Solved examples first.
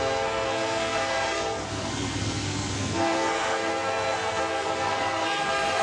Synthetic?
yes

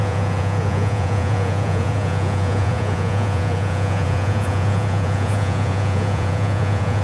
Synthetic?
yes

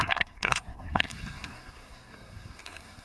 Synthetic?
yes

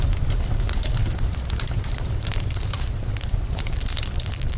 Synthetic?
no